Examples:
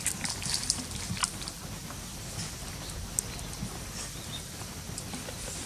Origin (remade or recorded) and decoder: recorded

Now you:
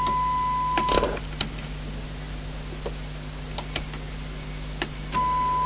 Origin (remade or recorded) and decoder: recorded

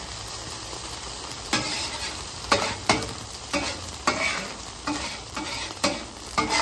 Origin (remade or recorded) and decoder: remade, vocoder, BigVGAN v2